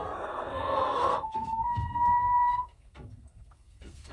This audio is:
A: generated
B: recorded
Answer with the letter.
A